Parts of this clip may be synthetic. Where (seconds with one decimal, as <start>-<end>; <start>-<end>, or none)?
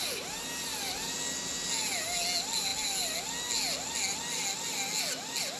none